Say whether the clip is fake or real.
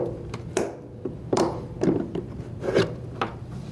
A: fake